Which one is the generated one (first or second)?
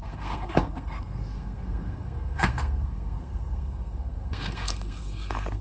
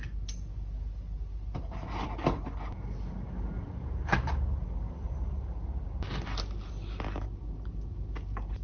first